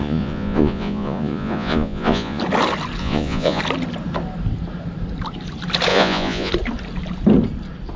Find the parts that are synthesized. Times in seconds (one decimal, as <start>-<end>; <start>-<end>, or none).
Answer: 0.0-2.4; 3.0-3.6; 5.9-6.5